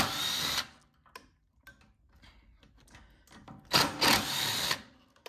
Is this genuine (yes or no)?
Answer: yes